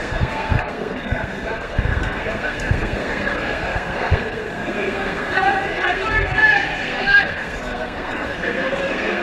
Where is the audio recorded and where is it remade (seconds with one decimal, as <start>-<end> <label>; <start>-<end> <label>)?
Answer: 0.0-9.2 remade